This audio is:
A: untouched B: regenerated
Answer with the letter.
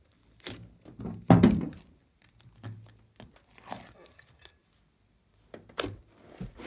A